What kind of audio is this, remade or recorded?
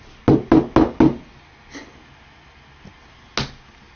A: recorded